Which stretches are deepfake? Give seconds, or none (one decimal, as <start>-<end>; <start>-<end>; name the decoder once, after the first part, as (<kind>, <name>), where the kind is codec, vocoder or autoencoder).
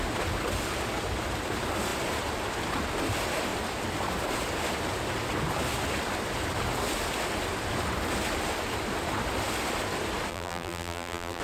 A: 10.3-11.4 (vocoder, BigVGAN v2)